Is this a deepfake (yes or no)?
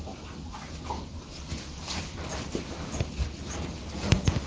no